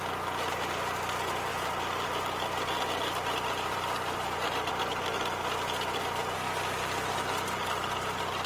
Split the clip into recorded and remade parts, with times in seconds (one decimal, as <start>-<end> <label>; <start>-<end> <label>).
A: 0.0-1.5 recorded; 1.5-4.7 remade; 4.7-8.5 recorded